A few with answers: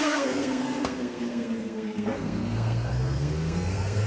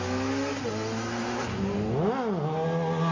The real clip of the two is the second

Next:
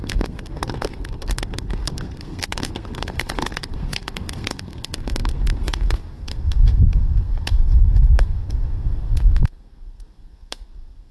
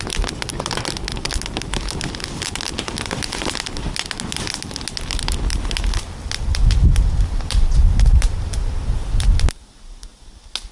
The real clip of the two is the second